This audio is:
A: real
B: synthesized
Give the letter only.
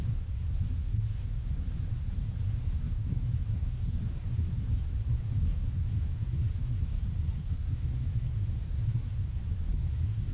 B